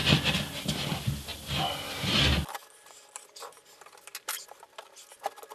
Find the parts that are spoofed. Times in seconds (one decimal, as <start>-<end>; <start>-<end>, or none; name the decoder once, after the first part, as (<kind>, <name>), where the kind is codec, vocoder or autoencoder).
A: none